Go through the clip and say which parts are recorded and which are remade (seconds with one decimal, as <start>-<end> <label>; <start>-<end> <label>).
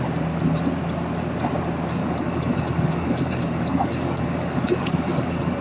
0.0-2.0 recorded; 2.0-5.6 remade